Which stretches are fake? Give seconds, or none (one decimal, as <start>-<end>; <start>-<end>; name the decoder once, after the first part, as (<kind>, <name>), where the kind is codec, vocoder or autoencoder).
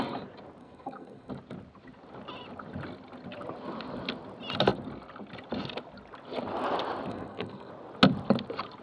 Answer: 0.6-1.3 (codec, SNAC); 7.1-7.7